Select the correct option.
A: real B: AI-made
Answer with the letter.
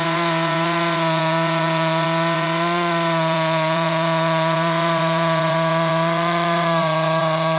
B